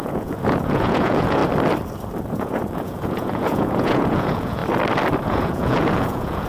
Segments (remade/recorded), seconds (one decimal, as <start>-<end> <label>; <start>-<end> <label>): 0.0-1.4 remade; 1.4-2.3 recorded; 2.3-4.6 remade; 4.6-5.2 recorded; 5.2-6.5 remade